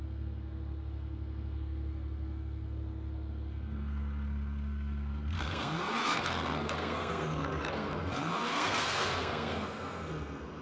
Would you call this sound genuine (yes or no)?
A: no